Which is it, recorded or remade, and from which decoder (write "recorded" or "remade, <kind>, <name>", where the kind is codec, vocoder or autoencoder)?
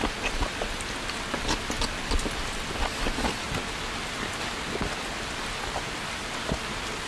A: recorded